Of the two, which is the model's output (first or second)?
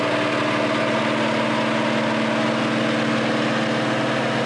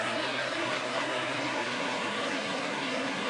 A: second